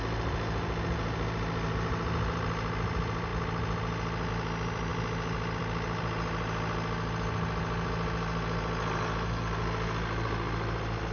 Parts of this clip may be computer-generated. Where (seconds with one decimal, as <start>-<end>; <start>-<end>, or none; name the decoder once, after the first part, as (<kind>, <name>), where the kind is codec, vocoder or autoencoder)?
none